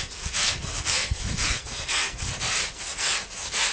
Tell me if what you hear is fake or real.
fake